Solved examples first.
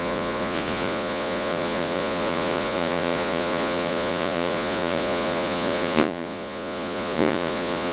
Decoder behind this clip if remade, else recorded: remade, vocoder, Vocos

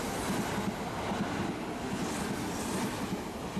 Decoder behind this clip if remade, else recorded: recorded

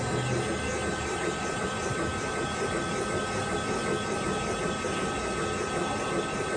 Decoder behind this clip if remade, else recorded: recorded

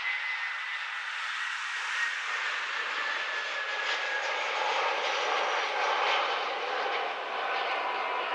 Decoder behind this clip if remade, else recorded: recorded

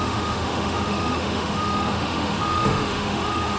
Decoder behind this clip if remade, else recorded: remade, autoencoder, DAC-VAE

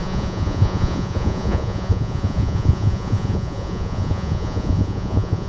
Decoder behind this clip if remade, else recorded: remade, vocoder, Vocos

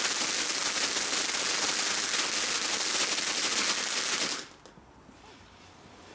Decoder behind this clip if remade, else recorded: recorded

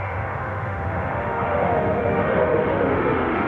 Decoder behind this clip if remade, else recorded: remade, autoencoder, DAC-VAE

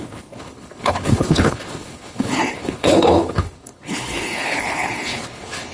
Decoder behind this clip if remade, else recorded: remade, codec, HILCodec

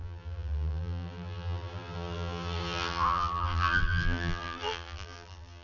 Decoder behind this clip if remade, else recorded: remade, vocoder, BigVGAN v2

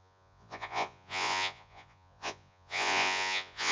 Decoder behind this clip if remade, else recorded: remade, vocoder, Vocos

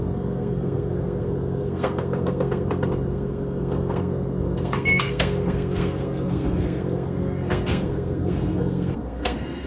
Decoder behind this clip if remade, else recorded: remade, codec, SNAC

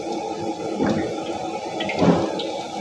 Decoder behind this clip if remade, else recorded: recorded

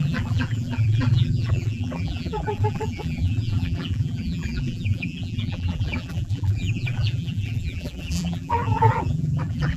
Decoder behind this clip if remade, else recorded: remade, vocoder, BigVGAN v2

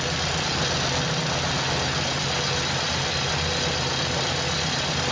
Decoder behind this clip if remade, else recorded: recorded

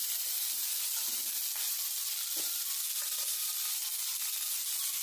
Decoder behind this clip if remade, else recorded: recorded